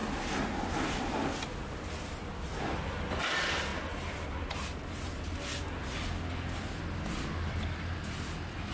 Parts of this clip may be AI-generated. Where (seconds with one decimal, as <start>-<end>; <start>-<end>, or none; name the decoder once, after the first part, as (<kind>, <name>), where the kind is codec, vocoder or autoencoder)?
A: none